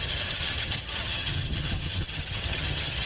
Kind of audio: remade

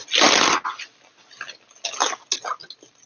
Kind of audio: recorded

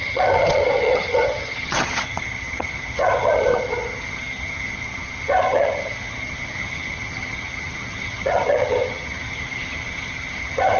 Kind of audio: remade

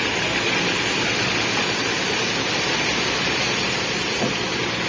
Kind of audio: recorded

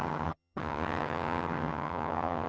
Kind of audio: remade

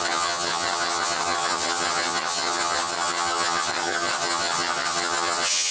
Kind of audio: remade